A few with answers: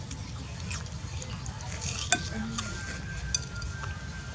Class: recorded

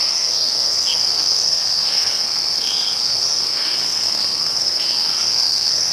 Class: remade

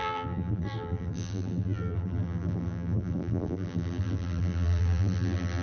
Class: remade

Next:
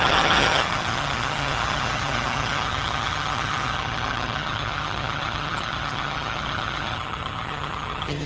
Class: remade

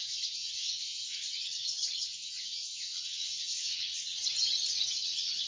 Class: remade